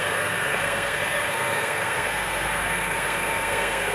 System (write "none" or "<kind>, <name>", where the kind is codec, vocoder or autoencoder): codec, SNAC